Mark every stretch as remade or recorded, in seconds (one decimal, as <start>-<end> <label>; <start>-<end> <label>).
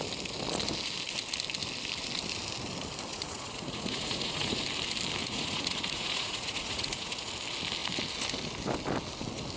0.0-3.1 recorded; 3.1-4.6 remade; 4.6-5.2 recorded; 5.2-7.3 remade; 7.3-9.6 recorded